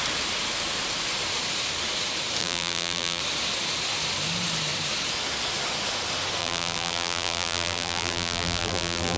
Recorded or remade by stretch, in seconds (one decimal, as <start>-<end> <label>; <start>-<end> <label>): 0.0-2.4 recorded; 2.4-3.2 remade; 3.2-6.4 recorded; 6.4-9.2 remade